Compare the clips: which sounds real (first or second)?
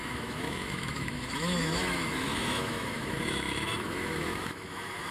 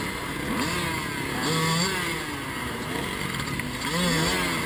second